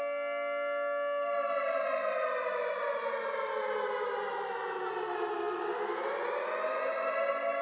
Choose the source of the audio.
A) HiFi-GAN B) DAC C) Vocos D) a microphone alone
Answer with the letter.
D